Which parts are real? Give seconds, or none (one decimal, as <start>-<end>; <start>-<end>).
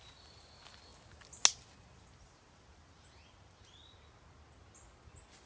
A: 0.0-5.5